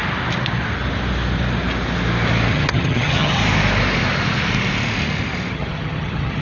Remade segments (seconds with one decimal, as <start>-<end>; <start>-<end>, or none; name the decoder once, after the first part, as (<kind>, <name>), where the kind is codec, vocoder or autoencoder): 2.5-3.4 (vocoder, HiFi-GAN); 5.5-6.4